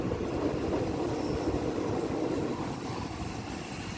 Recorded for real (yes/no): yes